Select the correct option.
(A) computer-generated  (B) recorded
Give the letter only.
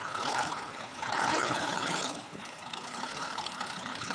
A